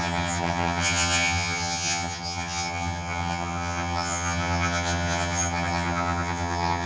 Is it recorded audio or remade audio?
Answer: remade